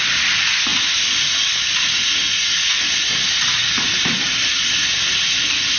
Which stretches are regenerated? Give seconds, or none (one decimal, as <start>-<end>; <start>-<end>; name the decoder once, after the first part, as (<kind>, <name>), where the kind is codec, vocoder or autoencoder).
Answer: none